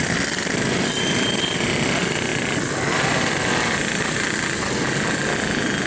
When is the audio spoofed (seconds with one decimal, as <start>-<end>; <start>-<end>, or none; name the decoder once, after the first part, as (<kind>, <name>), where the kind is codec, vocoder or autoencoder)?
none